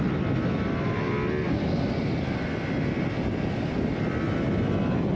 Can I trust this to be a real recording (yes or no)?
yes